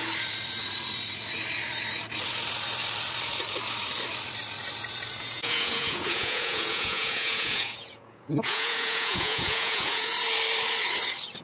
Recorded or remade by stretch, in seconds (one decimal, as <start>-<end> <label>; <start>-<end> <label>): 0.0-5.2 recorded; 5.2-10.1 remade; 10.1-11.4 recorded